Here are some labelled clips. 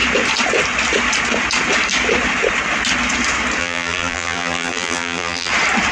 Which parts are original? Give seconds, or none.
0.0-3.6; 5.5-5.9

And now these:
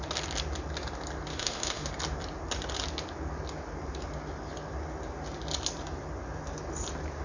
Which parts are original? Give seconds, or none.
0.0-1.3; 1.9-7.2

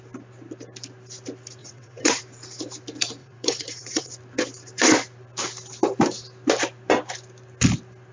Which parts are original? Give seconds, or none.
0.0-1.6; 2.2-3.2; 4.1-8.1

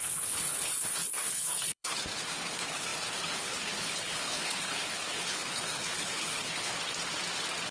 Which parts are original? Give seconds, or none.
6.7-7.7

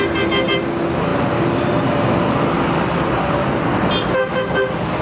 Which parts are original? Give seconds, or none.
0.0-5.0

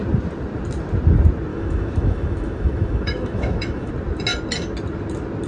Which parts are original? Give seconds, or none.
0.0-1.5; 3.9-5.5

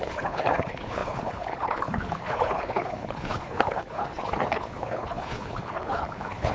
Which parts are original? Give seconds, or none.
none